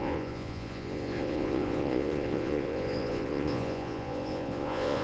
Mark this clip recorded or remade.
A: remade